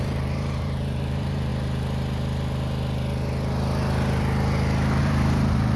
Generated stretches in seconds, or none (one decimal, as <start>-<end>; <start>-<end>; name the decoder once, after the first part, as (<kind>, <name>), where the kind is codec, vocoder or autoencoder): 0.0-1.5 (vocoder, BigVGAN v2); 5.0-5.8